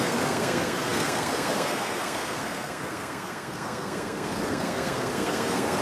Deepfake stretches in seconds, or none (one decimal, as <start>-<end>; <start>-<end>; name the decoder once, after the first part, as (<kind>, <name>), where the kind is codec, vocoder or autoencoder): 0.0-5.8 (codec, SNAC)